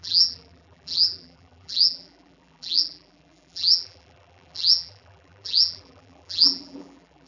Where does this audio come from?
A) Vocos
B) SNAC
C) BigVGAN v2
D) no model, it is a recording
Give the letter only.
C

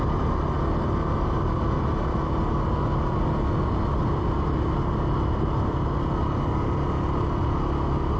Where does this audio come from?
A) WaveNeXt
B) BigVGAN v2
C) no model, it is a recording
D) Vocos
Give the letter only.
C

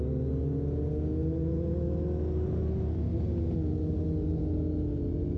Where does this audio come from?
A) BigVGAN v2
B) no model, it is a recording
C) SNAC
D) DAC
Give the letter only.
B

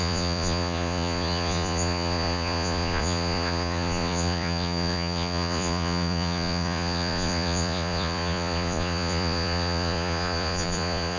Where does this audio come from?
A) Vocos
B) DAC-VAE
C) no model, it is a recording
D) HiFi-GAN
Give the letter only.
A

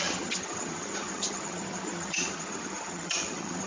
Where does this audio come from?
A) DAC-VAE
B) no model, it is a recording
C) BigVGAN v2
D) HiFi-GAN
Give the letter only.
D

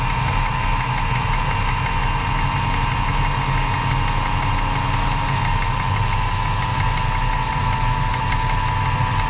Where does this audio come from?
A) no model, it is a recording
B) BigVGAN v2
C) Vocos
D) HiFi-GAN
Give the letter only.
A